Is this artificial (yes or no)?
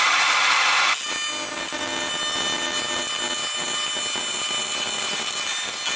no